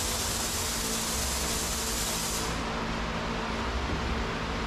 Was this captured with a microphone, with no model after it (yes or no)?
yes